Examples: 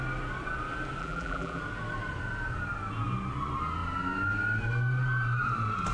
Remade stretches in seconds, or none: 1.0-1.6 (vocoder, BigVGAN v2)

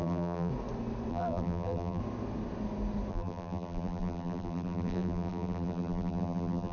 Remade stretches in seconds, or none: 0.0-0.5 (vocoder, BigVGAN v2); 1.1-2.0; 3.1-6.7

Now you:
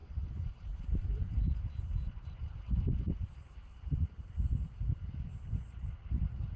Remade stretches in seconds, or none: 0.0-4.0 (vocoder, BigVGAN v2)

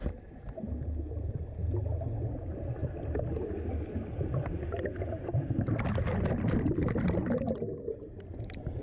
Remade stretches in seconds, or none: 2.8-3.6 (vocoder, BigVGAN v2)

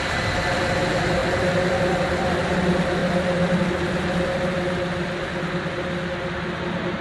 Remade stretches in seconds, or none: none

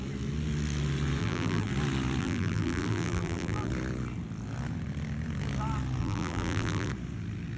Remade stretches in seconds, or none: 1.2-1.7 (vocoder, BigVGAN v2); 2.2-3.7; 6.0-6.9

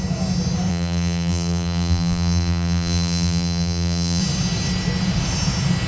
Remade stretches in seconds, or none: 0.7-4.2 (vocoder, BigVGAN v2)

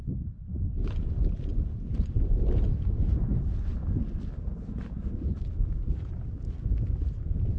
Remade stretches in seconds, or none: 0.0-1.1 (vocoder, BigVGAN v2)